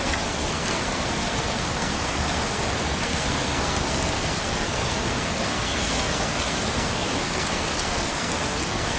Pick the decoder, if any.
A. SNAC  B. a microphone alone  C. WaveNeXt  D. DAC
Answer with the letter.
A